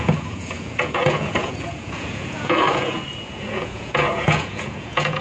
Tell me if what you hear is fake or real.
fake